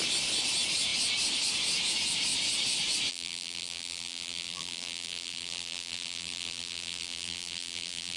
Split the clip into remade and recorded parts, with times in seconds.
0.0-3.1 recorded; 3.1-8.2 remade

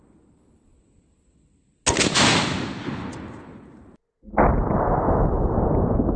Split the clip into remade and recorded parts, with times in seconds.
0.0-6.2 recorded

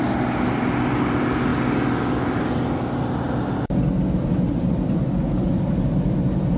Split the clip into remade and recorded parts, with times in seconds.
0.0-6.6 recorded

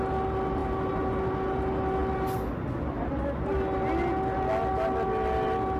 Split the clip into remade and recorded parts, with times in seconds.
0.0-5.8 recorded

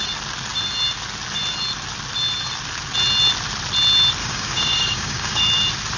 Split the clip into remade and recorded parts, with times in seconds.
0.0-4.2 recorded; 4.2-5.4 remade; 5.4-6.0 recorded

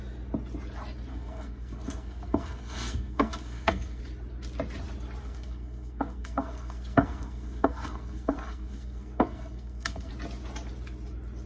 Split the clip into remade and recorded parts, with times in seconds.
0.0-1.1 recorded; 1.1-4.0 remade; 4.0-5.2 recorded; 5.2-10.1 remade; 10.1-11.5 recorded

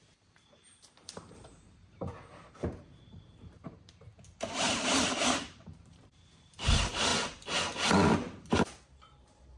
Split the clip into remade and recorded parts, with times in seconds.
0.0-7.1 remade; 7.1-8.4 recorded; 8.4-9.6 remade